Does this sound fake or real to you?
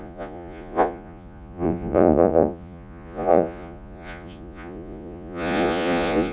fake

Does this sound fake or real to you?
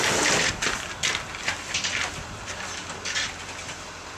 real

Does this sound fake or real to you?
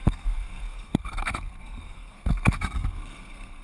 fake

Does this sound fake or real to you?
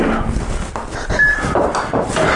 real